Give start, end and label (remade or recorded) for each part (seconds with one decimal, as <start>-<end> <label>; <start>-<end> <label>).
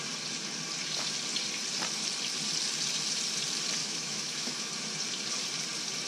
0.0-3.8 recorded; 3.8-4.7 remade; 4.7-6.1 recorded